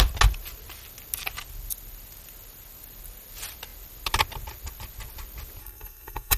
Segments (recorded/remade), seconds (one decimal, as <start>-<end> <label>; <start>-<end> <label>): 0.0-5.6 recorded; 5.6-6.4 remade